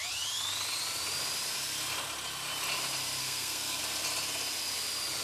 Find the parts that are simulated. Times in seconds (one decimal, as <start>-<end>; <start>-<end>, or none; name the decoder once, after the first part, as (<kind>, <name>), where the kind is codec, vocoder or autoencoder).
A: 3.2-3.8 (codec, SNAC)